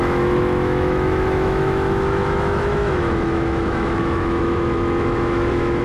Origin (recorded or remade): remade